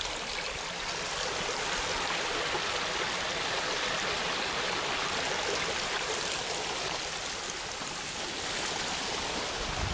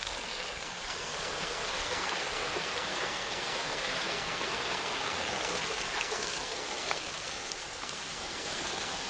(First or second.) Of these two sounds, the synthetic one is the second